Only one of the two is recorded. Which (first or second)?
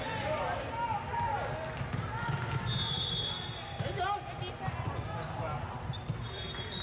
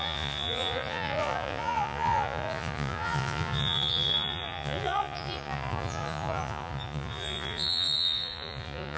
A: first